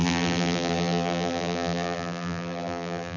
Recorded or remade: remade